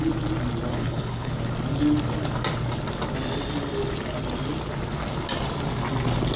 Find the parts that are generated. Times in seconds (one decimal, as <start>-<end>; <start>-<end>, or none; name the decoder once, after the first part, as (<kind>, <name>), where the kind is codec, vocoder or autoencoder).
0.7-1.3 (codec, HILCodec)